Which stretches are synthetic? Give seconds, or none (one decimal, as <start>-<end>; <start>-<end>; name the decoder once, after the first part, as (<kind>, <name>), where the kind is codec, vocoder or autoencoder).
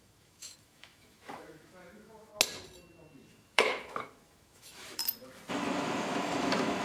0.0-2.3 (autoencoder, DAC-VAE); 3.3-5.0; 5.5-6.8